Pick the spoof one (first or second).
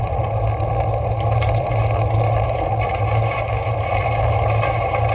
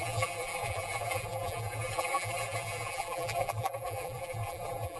second